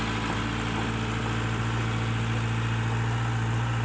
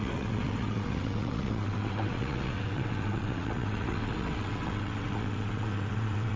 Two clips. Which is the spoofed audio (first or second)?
second